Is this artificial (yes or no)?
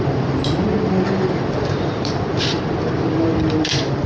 yes